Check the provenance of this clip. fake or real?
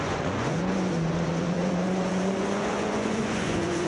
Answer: fake